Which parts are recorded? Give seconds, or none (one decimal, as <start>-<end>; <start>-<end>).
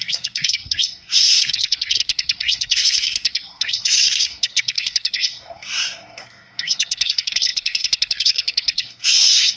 none